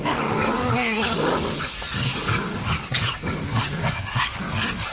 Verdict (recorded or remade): remade